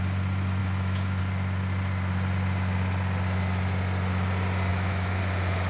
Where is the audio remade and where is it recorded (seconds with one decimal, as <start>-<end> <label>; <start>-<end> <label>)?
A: 0.0-0.6 recorded; 0.6-1.2 remade; 1.2-4.7 recorded; 4.7-5.2 remade; 5.2-5.7 recorded